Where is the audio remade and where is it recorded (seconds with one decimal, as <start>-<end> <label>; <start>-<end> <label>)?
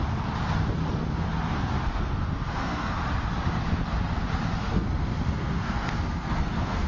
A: 0.0-1.8 recorded; 1.8-3.0 remade; 3.0-4.6 recorded; 4.6-6.9 remade